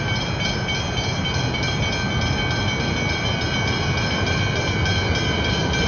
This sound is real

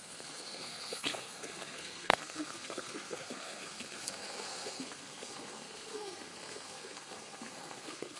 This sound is fake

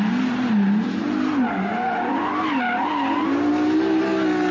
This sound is real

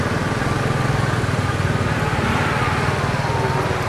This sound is real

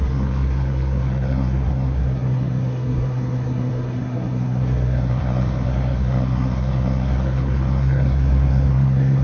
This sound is fake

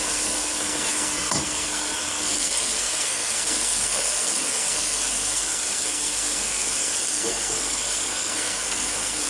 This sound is fake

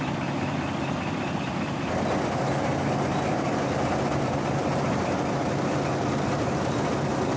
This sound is real